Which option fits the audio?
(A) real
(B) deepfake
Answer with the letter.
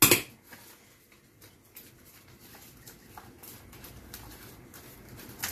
A